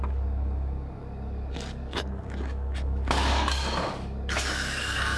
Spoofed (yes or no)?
yes